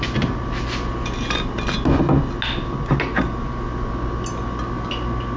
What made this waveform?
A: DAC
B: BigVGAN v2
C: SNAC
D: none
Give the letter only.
D